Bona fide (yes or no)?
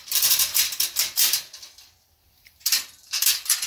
no